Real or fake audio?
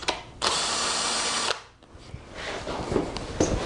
real